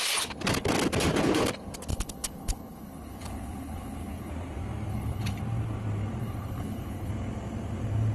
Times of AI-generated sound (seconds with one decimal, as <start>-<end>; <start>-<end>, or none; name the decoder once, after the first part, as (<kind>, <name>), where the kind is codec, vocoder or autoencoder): 1.9-4.3 (codec, HILCodec); 4.9-5.4; 6.2-7.1